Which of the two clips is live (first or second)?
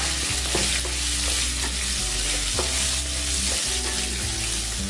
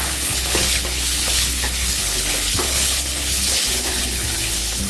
first